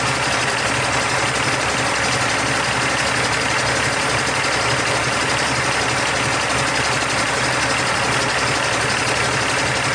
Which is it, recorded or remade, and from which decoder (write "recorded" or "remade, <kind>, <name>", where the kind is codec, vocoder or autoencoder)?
recorded